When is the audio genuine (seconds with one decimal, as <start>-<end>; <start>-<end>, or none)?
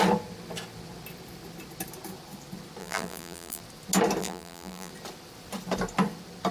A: 0.0-2.8; 3.6-4.2; 4.9-6.5